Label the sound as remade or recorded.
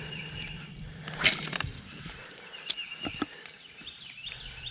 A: remade